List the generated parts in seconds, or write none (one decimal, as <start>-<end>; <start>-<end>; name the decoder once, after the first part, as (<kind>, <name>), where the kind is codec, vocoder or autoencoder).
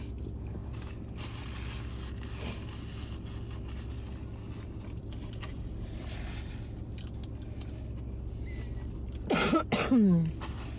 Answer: none